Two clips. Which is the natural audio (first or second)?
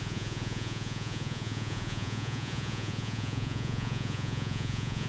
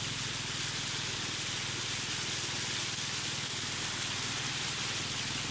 second